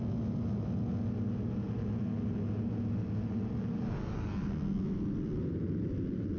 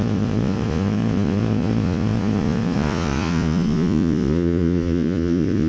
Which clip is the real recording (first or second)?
first